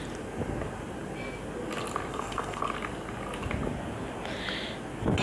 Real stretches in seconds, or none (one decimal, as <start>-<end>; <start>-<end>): 0.0-2.1; 2.6-5.2